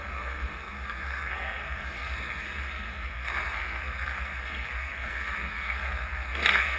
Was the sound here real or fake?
fake